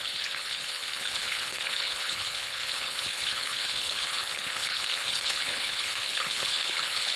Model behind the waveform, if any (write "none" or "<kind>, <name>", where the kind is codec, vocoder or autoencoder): codec, HILCodec